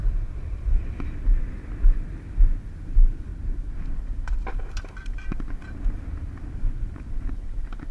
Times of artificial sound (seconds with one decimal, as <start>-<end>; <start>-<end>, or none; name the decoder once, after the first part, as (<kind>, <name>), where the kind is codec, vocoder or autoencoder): 0.0-0.9 (vocoder, BigVGAN v2); 3.3-4.4

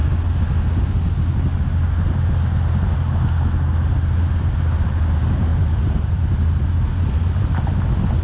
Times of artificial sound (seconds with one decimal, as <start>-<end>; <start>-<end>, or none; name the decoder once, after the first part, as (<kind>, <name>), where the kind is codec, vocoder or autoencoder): 5.5-6.3 (vocoder, BigVGAN v2)

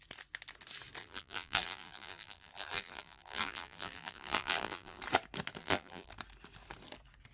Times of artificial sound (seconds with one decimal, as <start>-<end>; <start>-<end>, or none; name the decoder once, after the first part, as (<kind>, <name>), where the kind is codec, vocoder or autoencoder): 1.0-5.0 (vocoder, BigVGAN v2); 5.6-6.1

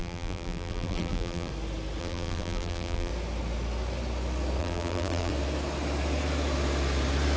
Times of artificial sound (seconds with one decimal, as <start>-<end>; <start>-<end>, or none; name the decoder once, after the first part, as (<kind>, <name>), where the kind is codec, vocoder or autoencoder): 0.0-1.5 (vocoder, BigVGAN v2); 2.0-3.1; 4.6-5.3